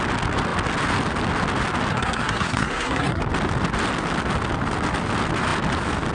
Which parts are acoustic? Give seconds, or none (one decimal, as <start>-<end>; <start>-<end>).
0.0-1.9; 3.2-6.1